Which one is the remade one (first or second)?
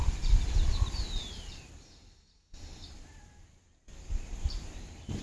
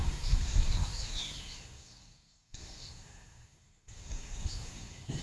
second